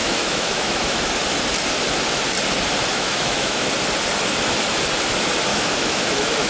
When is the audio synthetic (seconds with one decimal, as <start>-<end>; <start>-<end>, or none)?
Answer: 0.0-1.0; 2.9-3.7; 5.5-6.5